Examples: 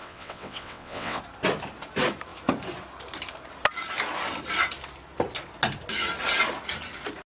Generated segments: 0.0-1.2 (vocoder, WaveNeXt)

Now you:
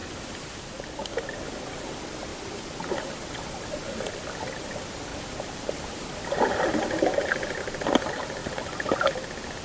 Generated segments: 0.0-0.8 (vocoder, BigVGAN v2); 2.3-3.6; 5.1-7.6; 8.4-9.1

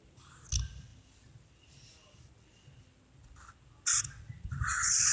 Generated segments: none